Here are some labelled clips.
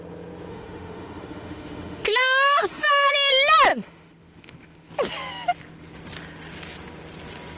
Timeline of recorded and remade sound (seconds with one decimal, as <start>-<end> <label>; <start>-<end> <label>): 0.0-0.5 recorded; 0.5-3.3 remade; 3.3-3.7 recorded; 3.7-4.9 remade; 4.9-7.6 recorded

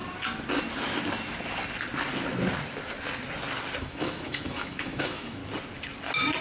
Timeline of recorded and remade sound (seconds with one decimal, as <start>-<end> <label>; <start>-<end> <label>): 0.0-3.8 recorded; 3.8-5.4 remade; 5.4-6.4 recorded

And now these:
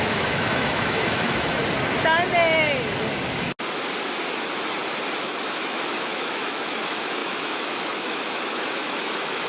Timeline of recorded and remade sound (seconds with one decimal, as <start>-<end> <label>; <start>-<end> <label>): 0.0-1.6 remade; 1.6-5.2 recorded; 5.2-9.5 remade

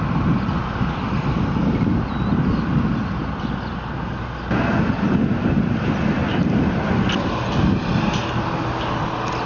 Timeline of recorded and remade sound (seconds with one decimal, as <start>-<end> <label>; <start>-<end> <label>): 0.0-9.5 recorded

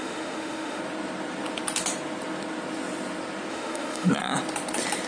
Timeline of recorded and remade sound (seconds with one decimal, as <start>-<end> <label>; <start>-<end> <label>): 0.0-0.8 remade; 0.8-3.5 recorded; 3.5-4.1 remade; 4.1-5.1 recorded

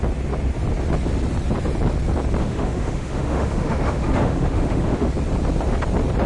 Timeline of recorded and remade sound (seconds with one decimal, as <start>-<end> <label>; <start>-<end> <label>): 0.0-2.4 recorded; 2.4-5.1 remade; 5.1-6.3 recorded